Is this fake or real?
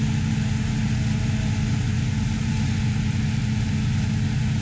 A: real